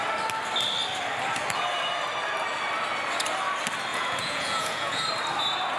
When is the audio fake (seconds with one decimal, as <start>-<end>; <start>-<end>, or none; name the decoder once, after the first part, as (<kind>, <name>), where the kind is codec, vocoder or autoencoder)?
3.9-5.0 (vocoder, Vocos)